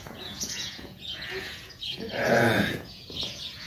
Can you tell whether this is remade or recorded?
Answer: remade